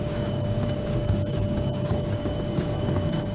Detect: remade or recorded remade